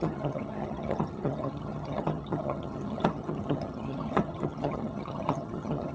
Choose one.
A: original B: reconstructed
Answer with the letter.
B